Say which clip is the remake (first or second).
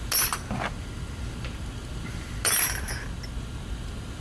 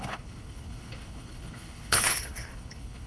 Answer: second